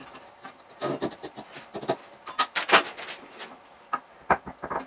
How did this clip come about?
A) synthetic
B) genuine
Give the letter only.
B